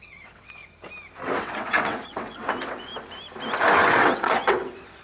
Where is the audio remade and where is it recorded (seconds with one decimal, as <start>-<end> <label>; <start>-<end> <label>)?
0.0-0.6 remade; 0.6-1.4 recorded; 1.4-2.9 remade; 2.9-3.9 recorded; 3.9-5.0 remade

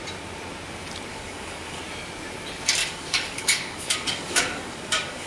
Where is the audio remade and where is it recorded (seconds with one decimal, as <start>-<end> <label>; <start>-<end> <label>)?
0.0-1.1 recorded; 1.1-1.8 remade; 1.8-2.8 recorded; 2.8-5.3 remade

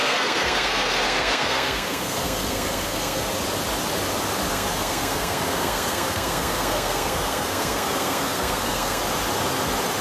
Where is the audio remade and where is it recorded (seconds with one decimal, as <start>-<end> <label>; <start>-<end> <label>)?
0.0-3.3 remade; 3.3-4.5 recorded; 4.5-9.0 remade; 9.0-10.0 recorded

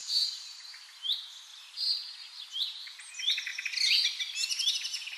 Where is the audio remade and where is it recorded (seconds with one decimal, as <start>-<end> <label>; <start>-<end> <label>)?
0.0-0.6 remade; 0.6-1.5 recorded; 1.5-3.1 remade; 3.1-5.2 recorded

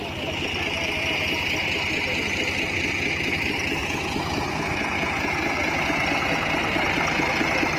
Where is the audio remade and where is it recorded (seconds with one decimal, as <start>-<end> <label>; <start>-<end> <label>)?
0.0-3.8 recorded; 3.8-6.3 remade; 6.3-7.8 recorded

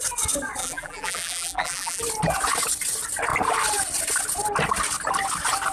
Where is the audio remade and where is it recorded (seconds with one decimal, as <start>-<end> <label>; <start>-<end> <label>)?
0.0-0.6 recorded; 0.6-2.0 remade; 2.0-5.7 recorded

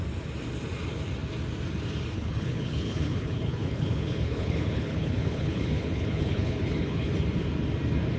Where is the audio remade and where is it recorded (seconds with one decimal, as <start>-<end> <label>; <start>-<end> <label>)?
0.0-2.2 recorded; 2.2-7.1 remade; 7.1-8.2 recorded